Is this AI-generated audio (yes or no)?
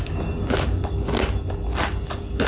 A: no